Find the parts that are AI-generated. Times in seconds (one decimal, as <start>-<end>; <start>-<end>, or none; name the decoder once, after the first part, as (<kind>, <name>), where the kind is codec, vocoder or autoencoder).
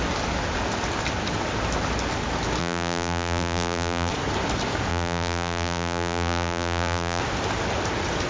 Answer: 2.6-4.1 (vocoder, BigVGAN v2); 4.9-7.2